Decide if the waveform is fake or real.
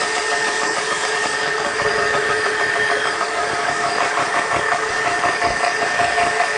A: fake